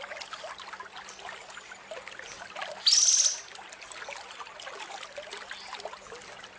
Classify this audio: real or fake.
real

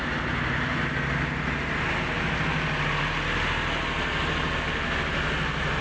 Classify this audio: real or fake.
real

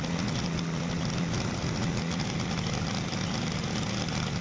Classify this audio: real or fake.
real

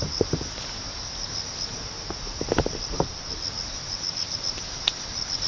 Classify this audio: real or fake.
real